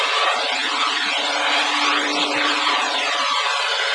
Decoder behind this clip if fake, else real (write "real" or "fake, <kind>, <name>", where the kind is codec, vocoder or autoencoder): real